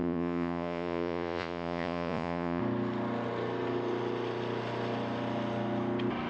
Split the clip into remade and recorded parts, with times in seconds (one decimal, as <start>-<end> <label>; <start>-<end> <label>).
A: 0.0-2.6 remade; 2.6-6.3 recorded